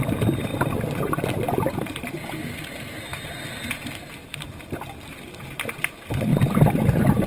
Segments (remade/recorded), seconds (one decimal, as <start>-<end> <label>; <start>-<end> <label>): 0.0-0.5 recorded; 0.5-2.1 remade; 2.1-4.2 recorded; 4.2-5.2 remade; 5.2-7.3 recorded